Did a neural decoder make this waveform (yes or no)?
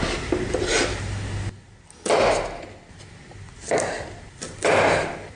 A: no